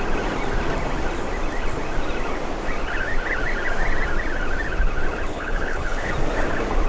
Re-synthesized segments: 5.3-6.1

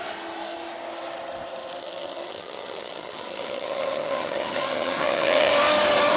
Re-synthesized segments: 1.8-5.5

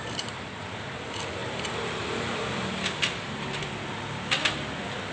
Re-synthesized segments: none

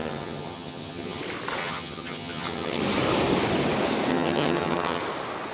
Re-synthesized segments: 0.0-1.2; 1.6-2.8; 4.1-5.0